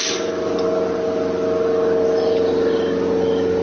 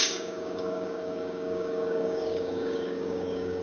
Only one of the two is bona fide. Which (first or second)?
first